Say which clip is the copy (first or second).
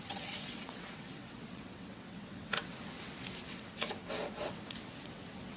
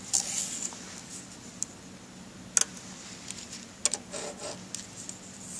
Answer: first